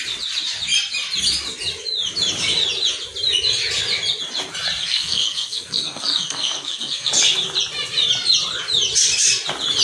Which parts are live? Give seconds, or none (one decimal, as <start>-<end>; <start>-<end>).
0.0-4.8; 7.1-9.8